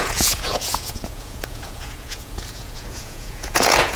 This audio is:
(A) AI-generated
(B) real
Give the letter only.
A